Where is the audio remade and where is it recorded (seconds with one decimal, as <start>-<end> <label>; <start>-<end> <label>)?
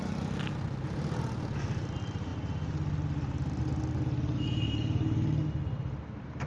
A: 0.0-6.5 recorded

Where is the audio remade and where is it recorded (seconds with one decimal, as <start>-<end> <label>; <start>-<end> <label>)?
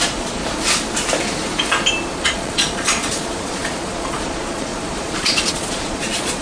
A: 0.0-0.4 remade; 0.4-2.2 recorded; 2.2-6.4 remade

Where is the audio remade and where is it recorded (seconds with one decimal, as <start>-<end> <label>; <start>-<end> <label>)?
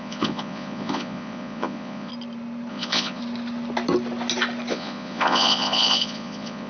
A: 0.0-2.1 remade; 2.1-2.7 recorded; 2.7-3.2 remade; 3.2-4.7 recorded; 4.7-6.7 remade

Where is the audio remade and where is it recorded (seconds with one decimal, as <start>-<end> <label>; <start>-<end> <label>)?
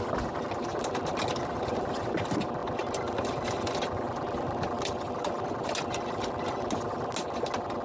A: 0.0-7.8 recorded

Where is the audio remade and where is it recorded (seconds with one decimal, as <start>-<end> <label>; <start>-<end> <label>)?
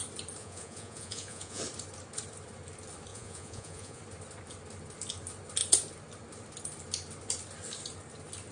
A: 0.0-0.4 recorded; 0.4-1.6 remade; 1.6-3.1 recorded; 3.1-4.0 remade; 4.0-8.5 recorded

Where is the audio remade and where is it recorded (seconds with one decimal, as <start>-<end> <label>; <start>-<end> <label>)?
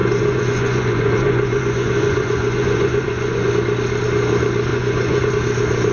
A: 0.0-3.5 remade; 3.5-4.7 recorded; 4.7-5.3 remade; 5.3-5.9 recorded